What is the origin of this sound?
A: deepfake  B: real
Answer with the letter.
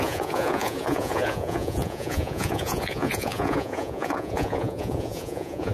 A